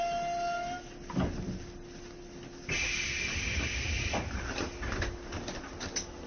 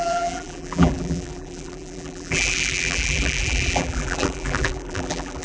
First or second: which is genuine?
first